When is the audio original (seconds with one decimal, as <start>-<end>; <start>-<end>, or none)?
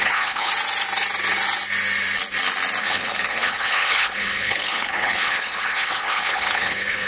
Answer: 0.5-2.8